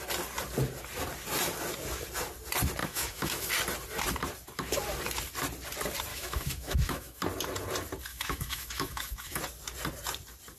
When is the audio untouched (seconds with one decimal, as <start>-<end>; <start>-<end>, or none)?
0.0-2.8; 3.5-6.1; 7.2-8.1; 9.4-10.6